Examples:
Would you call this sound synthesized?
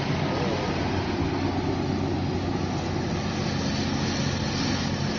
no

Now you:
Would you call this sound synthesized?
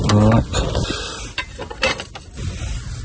no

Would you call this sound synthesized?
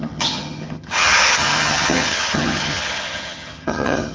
yes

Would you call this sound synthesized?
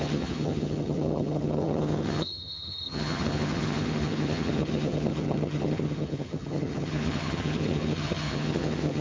yes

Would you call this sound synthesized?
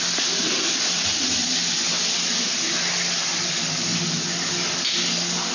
no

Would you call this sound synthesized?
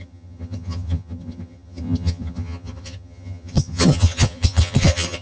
yes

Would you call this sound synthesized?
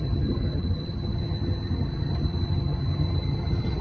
yes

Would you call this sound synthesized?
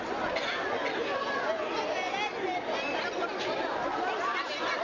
no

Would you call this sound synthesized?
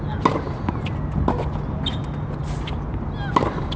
no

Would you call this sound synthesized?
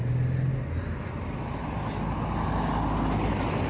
no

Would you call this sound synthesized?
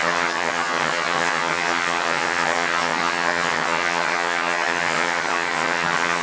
yes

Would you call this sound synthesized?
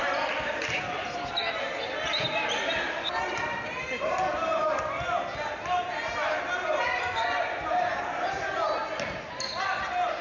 no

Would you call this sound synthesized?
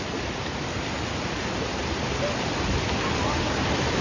no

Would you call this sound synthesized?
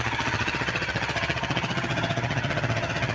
yes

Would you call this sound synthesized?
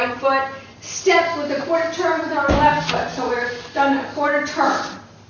no